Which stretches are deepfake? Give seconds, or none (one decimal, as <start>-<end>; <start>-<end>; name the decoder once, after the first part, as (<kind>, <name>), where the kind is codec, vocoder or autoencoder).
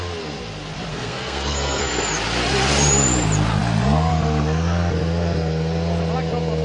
0.9-1.8 (codec, SNAC)